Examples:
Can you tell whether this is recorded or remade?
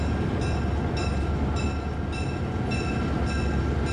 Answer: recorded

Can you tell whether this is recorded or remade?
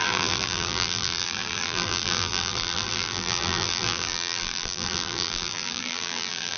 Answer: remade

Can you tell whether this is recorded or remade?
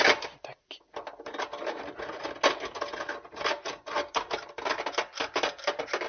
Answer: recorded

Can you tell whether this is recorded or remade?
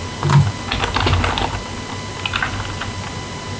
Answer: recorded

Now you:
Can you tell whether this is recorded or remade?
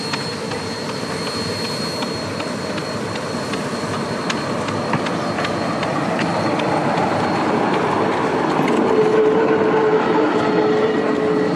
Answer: recorded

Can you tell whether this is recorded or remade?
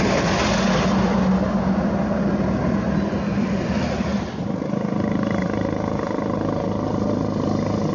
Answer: recorded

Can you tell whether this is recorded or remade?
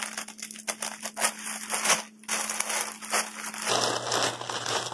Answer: recorded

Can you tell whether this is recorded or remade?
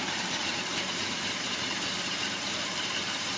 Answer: remade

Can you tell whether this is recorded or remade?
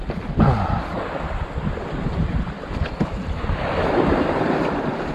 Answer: recorded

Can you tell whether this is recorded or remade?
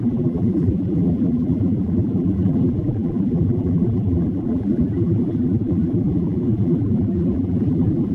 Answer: remade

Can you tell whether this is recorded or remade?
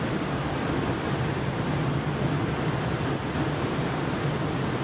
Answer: remade